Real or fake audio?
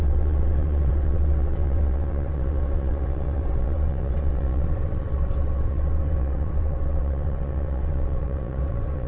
fake